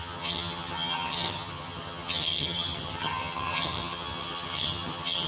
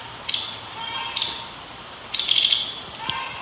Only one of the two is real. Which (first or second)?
second